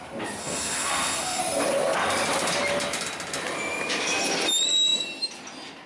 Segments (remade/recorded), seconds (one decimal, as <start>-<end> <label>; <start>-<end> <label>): 0.0-0.4 recorded; 0.4-1.4 remade; 1.4-5.9 recorded

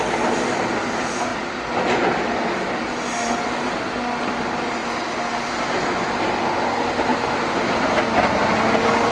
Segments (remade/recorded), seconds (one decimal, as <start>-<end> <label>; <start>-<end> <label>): 0.0-9.1 recorded